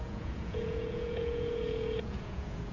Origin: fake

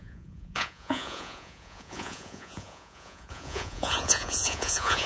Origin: fake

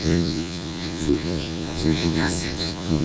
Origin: fake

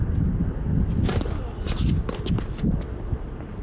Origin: real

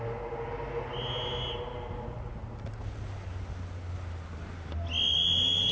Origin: real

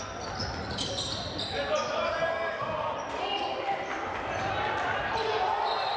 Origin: real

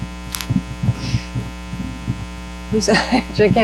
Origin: real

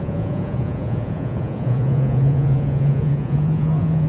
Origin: fake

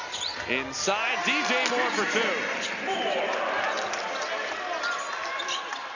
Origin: real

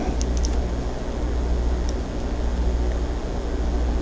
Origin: real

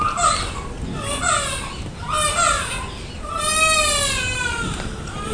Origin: real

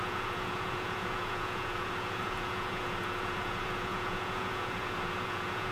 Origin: fake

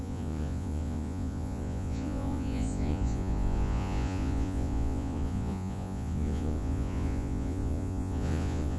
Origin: fake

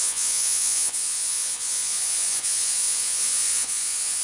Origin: fake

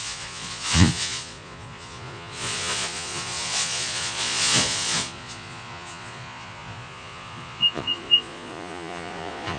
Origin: fake